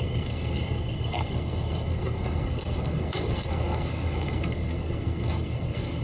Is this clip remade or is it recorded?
remade